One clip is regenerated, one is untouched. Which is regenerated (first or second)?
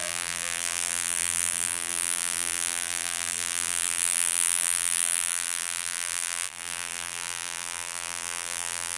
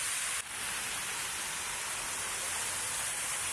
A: first